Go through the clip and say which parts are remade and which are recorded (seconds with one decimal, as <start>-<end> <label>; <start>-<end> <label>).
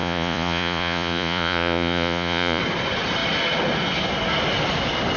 0.0-2.6 remade; 2.6-5.2 recorded